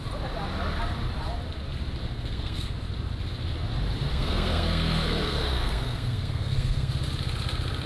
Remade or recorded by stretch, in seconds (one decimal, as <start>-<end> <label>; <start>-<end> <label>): 0.0-2.0 recorded; 2.0-2.7 remade; 2.7-4.1 recorded; 4.1-6.9 remade; 6.9-7.9 recorded

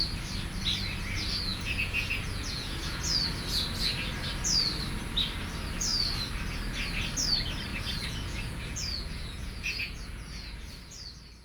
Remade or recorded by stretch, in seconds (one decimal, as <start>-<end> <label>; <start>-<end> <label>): 0.0-1.5 recorded; 1.5-3.0 remade; 3.0-7.7 recorded; 7.7-10.7 remade; 10.7-11.4 recorded

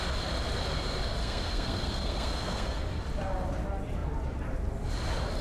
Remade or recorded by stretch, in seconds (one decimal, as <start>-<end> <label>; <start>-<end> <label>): 0.0-1.2 recorded; 1.2-2.8 remade; 2.8-5.4 recorded

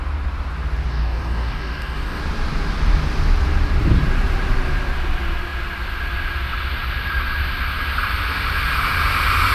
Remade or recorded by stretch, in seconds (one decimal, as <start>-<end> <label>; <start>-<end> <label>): 0.0-0.9 recorded; 0.9-2.2 remade; 2.2-9.5 recorded